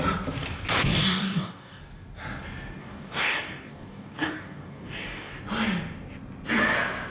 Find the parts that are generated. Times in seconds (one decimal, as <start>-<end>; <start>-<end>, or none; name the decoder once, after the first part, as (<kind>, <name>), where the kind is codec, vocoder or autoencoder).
0.8-1.8 (codec, DAC); 2.8-5.4